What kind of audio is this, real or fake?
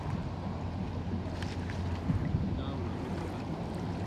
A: real